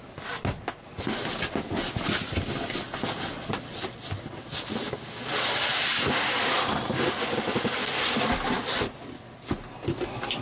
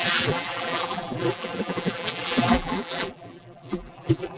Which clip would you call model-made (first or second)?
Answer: second